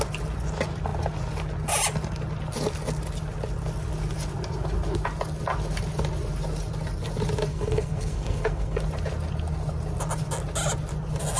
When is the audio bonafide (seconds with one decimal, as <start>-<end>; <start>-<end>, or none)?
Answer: 0.0-7.5; 8.8-11.4